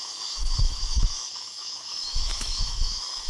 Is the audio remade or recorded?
remade